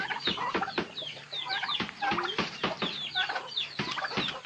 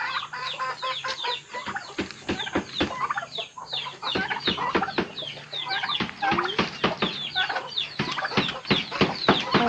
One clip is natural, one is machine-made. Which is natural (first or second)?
second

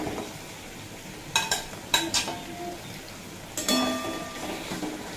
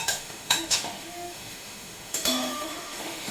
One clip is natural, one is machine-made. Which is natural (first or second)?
first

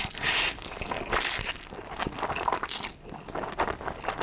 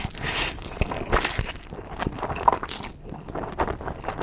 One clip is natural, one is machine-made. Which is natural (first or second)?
first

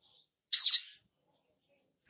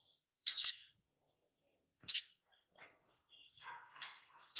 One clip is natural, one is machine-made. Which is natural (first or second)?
first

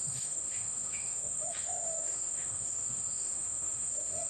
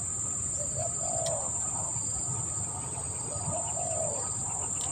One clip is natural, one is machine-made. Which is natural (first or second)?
second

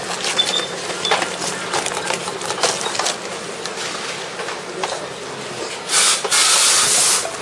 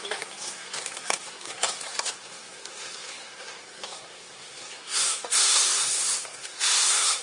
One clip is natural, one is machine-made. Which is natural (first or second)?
first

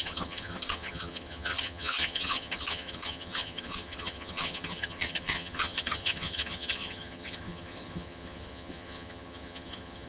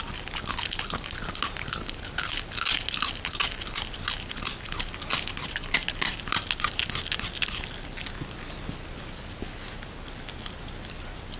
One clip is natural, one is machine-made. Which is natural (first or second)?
second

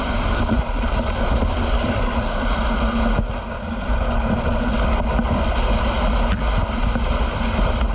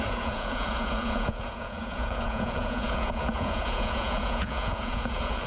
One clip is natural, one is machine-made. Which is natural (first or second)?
first